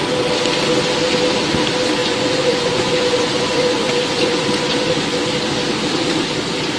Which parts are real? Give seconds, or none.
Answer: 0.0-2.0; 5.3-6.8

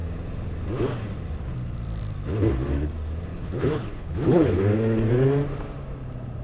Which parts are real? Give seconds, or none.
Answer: 0.0-3.3; 4.6-6.4

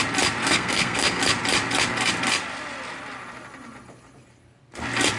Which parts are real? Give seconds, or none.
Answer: 0.0-0.4; 1.2-5.2